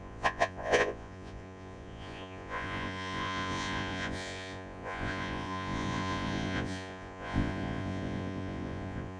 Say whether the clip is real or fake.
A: fake